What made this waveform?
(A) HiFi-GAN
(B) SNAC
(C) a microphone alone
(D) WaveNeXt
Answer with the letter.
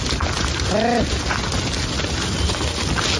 C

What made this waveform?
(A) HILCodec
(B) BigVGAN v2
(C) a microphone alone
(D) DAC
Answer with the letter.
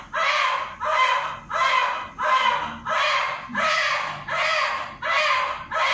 C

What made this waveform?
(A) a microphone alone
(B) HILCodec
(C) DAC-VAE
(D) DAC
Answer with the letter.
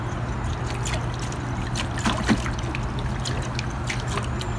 A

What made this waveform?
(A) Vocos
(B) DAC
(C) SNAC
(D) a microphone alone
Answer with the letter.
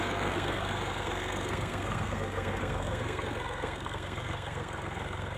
C